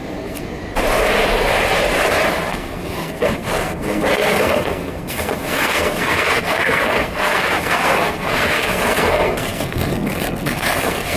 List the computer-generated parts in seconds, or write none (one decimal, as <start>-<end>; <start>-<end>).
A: 0.0-0.6; 2.5-11.2

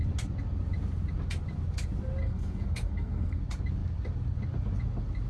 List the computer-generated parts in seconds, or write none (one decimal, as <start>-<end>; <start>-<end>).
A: 2.2-3.4

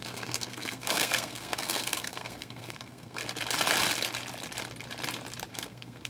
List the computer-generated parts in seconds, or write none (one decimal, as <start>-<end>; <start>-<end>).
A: 0.0-3.2; 5.5-6.1

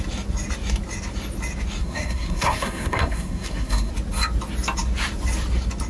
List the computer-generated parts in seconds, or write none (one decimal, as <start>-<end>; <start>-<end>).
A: 1.8-3.9

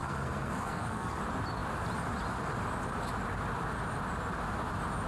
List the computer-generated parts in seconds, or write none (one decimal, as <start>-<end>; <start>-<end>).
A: 0.0-1.2

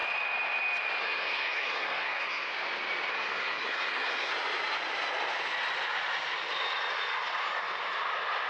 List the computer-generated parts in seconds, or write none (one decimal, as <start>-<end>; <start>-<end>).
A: 1.0-2.5; 3.1-4.3

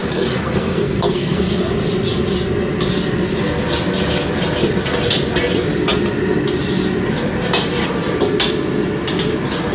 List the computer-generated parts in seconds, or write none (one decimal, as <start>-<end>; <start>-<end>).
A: 0.0-1.6